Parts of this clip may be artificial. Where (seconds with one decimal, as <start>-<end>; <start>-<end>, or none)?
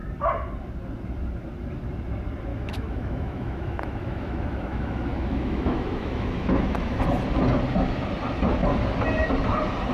2.5-7.0